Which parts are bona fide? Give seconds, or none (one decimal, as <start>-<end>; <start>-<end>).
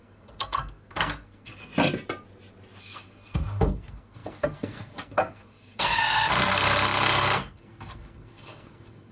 1.7-2.8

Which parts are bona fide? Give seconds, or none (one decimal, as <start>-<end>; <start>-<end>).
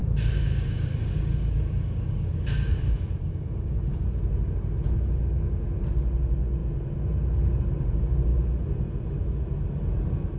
4.0-10.4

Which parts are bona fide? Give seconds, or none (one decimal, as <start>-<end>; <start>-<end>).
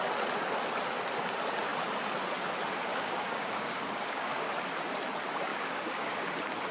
0.0-2.9; 4.5-5.5; 6.2-6.7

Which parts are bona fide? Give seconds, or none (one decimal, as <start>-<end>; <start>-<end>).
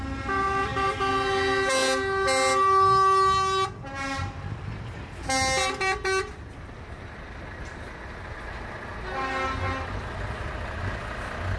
0.0-11.6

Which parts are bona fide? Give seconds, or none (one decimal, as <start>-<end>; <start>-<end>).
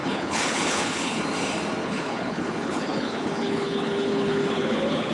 1.2-1.8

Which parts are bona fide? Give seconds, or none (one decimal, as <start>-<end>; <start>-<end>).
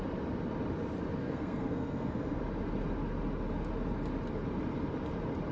0.0-1.2; 2.4-5.5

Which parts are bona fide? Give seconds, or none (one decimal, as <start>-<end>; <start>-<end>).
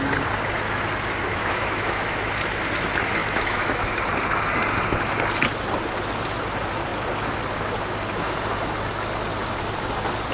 0.0-1.3; 2.3-3.2; 4.0-10.3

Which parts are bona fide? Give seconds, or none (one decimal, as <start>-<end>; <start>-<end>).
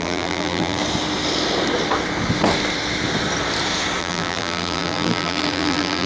0.8-4.0